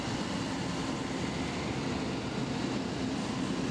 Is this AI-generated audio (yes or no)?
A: no